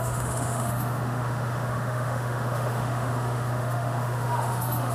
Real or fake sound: fake